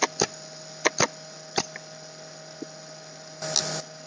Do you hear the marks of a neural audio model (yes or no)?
no